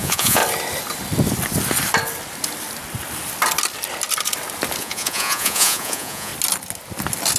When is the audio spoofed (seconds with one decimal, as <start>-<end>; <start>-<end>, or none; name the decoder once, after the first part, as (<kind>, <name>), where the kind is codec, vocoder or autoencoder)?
0.0-0.4 (vocoder, Vocos); 4.8-6.3